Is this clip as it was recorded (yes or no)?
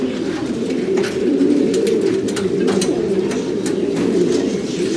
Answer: yes